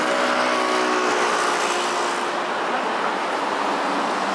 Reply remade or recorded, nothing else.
recorded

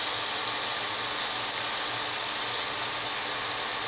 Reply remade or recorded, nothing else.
recorded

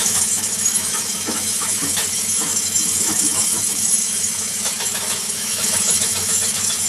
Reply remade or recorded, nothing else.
remade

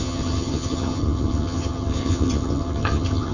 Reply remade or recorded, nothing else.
remade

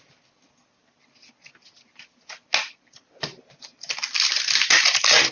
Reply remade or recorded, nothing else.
recorded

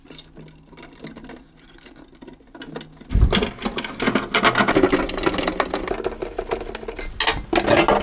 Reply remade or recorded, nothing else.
recorded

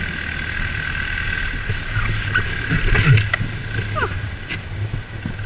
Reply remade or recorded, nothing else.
recorded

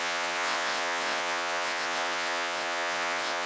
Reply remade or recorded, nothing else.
remade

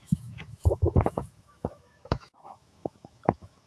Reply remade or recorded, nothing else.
remade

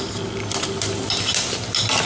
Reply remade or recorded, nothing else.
recorded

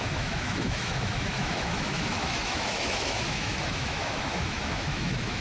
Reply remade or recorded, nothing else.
remade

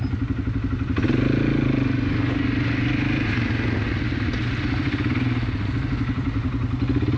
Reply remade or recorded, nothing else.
recorded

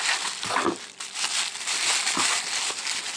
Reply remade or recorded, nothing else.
recorded